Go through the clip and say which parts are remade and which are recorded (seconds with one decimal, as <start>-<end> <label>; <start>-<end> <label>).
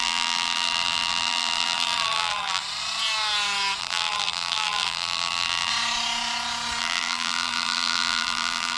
0.0-2.6 remade; 2.6-3.8 recorded; 3.8-5.7 remade; 5.7-6.8 recorded; 6.8-8.8 remade